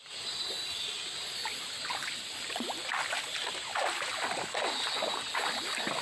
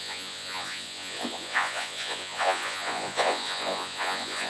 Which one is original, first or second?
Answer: first